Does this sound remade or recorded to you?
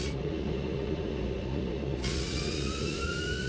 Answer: remade